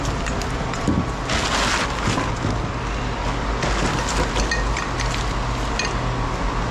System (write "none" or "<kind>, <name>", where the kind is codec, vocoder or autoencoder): none